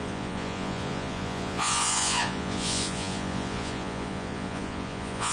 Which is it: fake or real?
fake